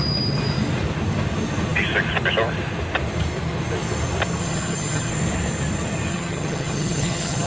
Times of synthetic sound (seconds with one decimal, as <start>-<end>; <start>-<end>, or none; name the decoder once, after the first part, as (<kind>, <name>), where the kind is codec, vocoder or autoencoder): 4.4-5.1 (vocoder, HiFi-GAN); 6.1-7.5